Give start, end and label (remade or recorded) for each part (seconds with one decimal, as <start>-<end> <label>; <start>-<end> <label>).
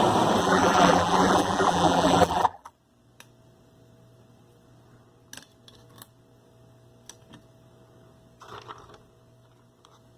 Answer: 0.0-0.4 recorded; 0.4-2.7 remade; 2.7-10.2 recorded